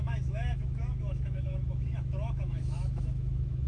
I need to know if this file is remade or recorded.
remade